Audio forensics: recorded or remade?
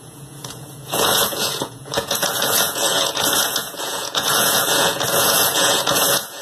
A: remade